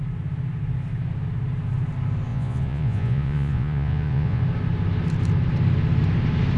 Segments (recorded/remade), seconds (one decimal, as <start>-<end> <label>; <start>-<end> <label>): 0.0-2.3 recorded; 2.3-4.4 remade; 4.4-6.6 recorded